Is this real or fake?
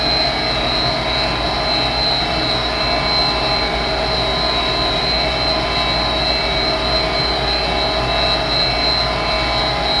real